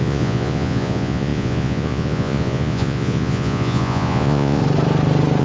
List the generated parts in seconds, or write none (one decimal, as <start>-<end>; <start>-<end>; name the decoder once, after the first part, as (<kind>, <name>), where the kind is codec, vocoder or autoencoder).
0.0-4.6 (vocoder, Vocos)